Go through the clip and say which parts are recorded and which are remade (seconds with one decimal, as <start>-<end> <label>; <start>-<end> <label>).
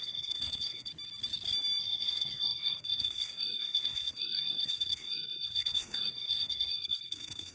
0.0-0.9 remade; 0.9-1.8 recorded; 1.8-7.5 remade